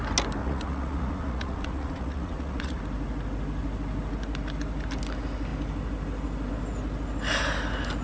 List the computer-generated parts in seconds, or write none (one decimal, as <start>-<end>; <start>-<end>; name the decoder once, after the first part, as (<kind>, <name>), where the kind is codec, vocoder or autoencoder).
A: 0.4-2.8 (vocoder, Vocos)